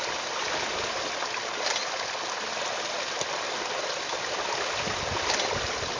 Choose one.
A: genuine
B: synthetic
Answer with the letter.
A